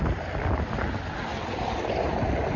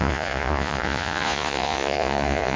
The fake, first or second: second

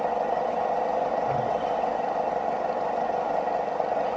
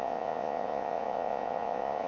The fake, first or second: second